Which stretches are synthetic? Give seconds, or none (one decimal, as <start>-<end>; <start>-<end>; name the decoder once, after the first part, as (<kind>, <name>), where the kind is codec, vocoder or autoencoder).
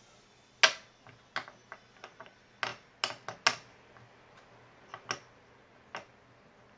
none